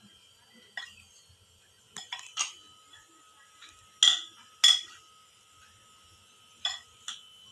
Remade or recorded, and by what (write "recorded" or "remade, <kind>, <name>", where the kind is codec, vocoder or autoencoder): recorded